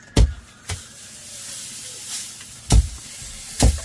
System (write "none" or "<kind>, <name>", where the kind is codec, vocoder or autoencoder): none